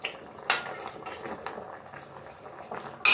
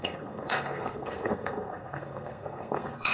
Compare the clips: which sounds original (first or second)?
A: first